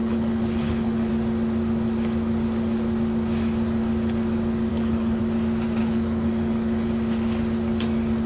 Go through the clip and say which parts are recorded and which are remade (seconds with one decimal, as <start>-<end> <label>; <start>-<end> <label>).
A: 0.0-1.1 remade; 1.1-4.7 recorded; 4.7-5.2 remade; 5.2-5.8 recorded; 5.8-6.9 remade; 6.9-8.3 recorded